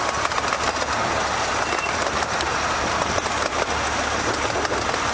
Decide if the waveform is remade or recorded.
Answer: recorded